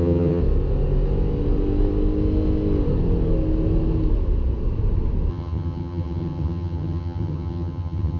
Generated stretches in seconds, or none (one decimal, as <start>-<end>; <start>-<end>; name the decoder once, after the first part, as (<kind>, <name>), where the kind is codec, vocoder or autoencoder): 0.0-0.4 (vocoder, HiFi-GAN); 5.3-8.2